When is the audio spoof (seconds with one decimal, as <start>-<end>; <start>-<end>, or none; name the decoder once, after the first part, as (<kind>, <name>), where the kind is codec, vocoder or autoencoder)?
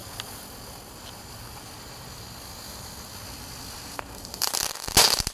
none